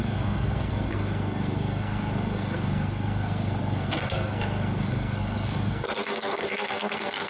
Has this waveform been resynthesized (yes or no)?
yes